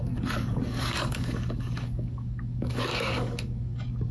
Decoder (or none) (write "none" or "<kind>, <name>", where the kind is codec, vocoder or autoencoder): codec, DAC